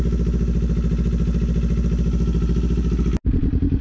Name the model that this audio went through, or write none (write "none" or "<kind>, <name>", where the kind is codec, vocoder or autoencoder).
none